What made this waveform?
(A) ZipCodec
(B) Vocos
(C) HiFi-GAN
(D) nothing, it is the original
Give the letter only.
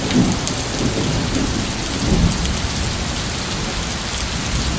D